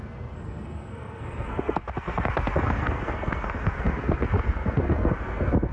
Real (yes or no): no